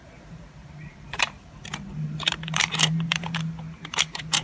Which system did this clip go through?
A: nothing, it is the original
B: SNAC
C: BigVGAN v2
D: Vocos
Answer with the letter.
C